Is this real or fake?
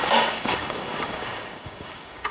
fake